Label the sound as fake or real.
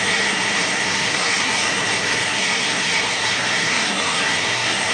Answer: fake